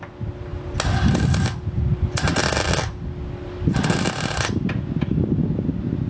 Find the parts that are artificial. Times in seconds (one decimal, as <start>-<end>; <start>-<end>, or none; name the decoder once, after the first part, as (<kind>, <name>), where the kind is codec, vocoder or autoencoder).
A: none